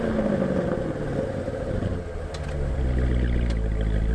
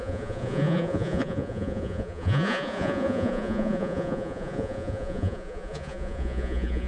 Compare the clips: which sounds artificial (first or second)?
second